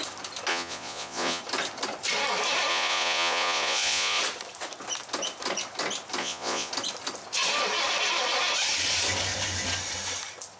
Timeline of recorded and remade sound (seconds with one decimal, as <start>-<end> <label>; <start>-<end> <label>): 0.0-0.5 recorded; 0.5-1.4 remade; 1.4-2.7 recorded; 2.7-4.2 remade; 4.2-6.2 recorded; 6.2-6.7 remade; 6.7-10.6 recorded